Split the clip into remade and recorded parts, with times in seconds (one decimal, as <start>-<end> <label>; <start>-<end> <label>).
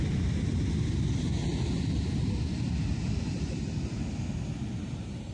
0.0-5.3 recorded